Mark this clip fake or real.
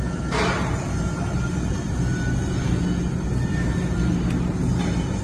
real